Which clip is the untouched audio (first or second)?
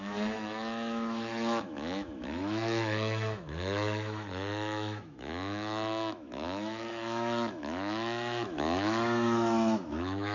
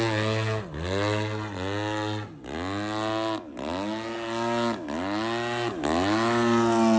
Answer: second